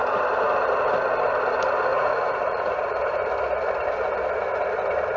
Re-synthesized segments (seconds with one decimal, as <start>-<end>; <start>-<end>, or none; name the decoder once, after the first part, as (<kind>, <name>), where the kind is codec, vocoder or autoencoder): 1.9-3.0 (vocoder, Vocos)